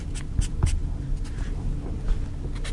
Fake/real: real